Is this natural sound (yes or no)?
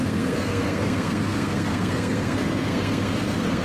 no